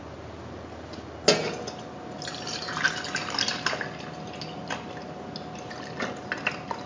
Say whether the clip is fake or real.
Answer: real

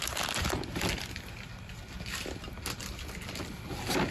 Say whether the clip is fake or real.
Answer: real